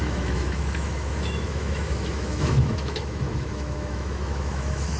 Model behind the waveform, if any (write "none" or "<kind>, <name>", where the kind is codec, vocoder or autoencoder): autoencoder, DAC-VAE